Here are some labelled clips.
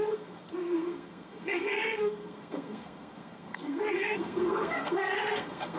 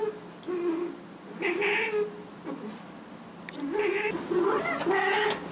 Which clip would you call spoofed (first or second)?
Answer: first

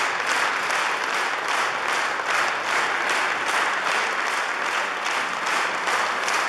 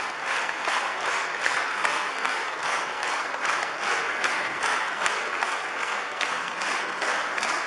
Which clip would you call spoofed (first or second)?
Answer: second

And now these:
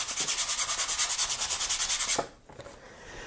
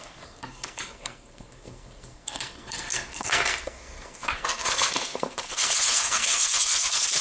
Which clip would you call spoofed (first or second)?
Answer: second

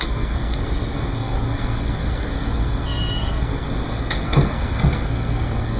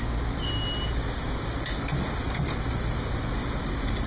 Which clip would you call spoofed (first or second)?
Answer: first